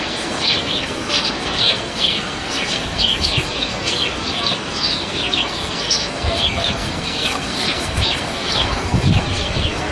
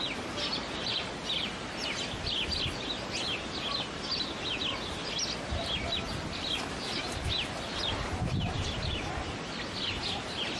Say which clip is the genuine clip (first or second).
second